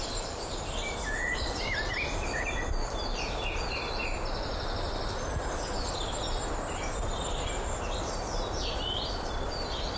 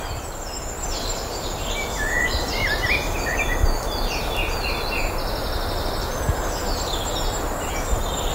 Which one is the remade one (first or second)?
first